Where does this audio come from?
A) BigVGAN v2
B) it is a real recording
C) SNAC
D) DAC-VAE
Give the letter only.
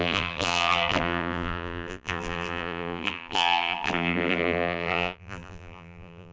A